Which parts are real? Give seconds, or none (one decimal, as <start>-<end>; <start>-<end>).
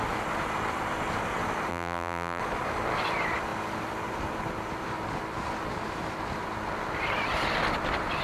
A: 0.0-1.7; 2.4-8.2